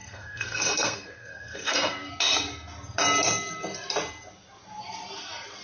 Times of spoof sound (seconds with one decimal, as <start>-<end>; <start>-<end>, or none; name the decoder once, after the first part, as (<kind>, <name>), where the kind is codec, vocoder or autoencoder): 0.0-2.1 (codec, SNAC)